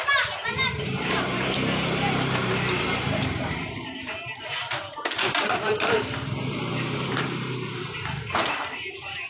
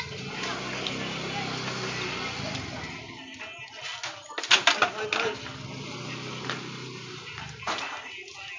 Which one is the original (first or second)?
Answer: second